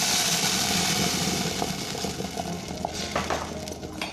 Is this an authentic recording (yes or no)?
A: yes